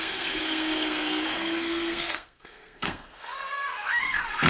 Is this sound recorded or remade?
remade